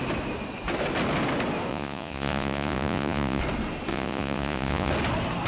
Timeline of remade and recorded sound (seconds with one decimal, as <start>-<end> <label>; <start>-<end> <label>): 0.0-1.7 recorded; 1.7-3.4 remade; 3.4-3.9 recorded; 3.9-4.9 remade; 4.9-5.5 recorded